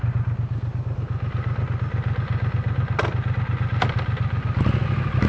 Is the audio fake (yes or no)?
no